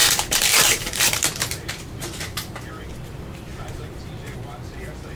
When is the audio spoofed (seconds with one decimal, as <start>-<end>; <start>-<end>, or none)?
0.0-2.9; 3.5-4.0